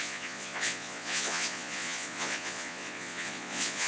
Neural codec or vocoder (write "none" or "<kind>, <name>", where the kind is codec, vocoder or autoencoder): vocoder, Vocos